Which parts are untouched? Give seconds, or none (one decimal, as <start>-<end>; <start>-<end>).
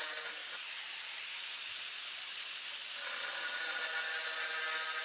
0.0-5.0